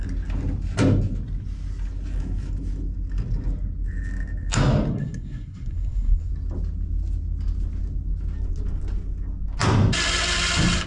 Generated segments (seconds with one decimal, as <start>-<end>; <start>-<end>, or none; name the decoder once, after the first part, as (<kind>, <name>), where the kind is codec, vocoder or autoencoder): 4.9-6.3 (codec, SNAC)